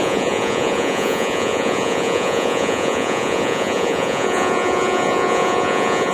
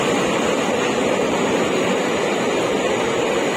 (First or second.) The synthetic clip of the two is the first